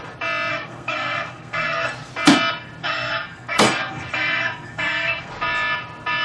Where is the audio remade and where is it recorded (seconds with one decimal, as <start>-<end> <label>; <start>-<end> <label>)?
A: 0.0-0.5 recorded; 0.5-2.1 remade; 2.1-2.8 recorded; 2.8-5.3 remade; 5.3-6.2 recorded

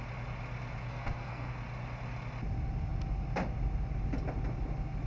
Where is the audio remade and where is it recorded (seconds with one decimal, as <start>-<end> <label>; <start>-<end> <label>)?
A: 0.0-0.9 recorded; 0.9-1.5 remade; 1.5-5.1 recorded

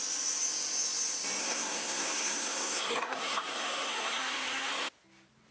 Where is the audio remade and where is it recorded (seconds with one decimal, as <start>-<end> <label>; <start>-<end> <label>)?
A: 0.0-1.4 recorded; 1.4-4.7 remade; 4.7-5.5 recorded